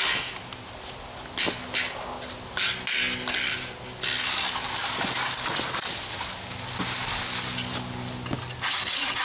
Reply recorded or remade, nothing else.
recorded